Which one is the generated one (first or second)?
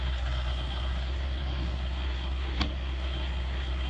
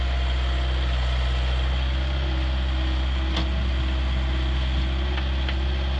first